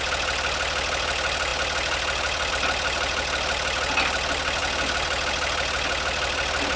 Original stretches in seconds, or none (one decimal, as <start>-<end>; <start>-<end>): 0.0-6.8